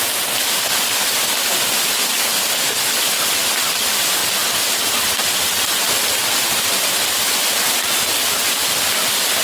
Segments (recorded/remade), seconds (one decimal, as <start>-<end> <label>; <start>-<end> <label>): 0.0-9.4 recorded